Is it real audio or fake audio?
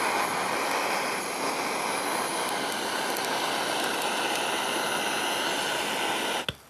real